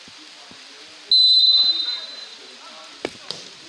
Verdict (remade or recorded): recorded